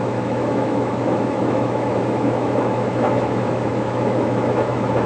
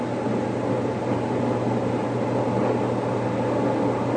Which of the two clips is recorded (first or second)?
second